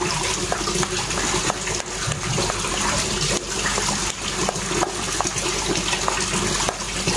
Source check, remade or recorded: recorded